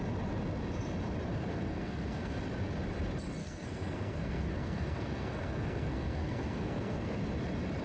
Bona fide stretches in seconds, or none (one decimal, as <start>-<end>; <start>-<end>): 0.0-1.5; 2.4-3.4; 7.2-7.8